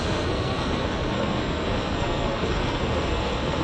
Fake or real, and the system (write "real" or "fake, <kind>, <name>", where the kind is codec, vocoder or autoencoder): fake, codec, SNAC